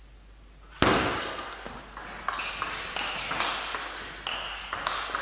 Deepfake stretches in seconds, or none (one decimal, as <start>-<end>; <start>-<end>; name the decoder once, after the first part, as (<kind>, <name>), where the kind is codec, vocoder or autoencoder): 1.2-1.7 (codec, SNAC)